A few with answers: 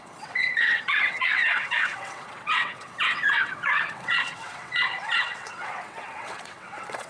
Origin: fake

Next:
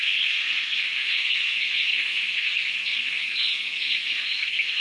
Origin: fake